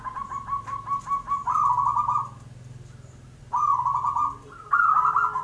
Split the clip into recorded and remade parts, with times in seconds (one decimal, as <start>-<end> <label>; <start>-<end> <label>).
0.0-5.4 recorded